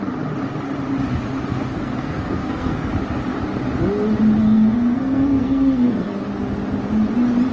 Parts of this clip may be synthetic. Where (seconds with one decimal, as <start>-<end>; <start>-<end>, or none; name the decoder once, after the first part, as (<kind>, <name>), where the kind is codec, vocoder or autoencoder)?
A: 1.7-2.9 (codec, SNAC); 4.4-6.2